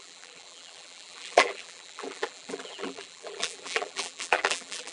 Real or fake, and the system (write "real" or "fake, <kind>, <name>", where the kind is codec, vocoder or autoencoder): fake, vocoder, BigVGAN v2